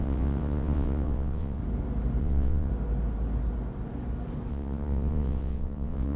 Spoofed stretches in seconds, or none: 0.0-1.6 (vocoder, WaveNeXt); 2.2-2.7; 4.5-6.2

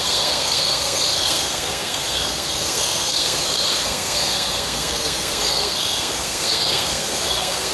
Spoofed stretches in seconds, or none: 0.0-7.7 (codec, SNAC)

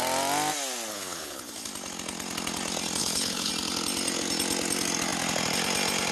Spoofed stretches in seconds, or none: 0.9-1.7 (codec, HILCodec); 3.0-3.5

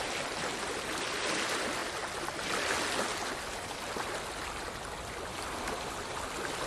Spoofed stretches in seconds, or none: none

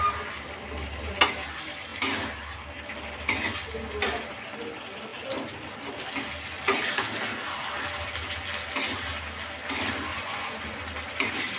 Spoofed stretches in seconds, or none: 10.1-10.8 (vocoder, Vocos)

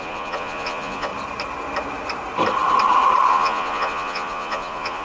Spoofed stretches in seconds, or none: 0.0-1.1 (vocoder, Vocos); 3.3-5.0

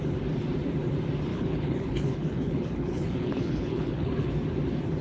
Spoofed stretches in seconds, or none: 1.3-4.3 (codec, HILCodec)

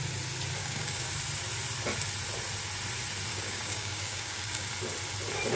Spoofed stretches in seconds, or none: 0.6-1.1 (codec, DAC); 3.3-4.7